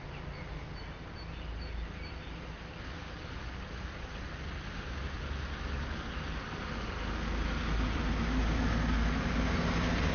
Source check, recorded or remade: recorded